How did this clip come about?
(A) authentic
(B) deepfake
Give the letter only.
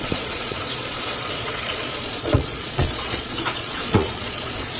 B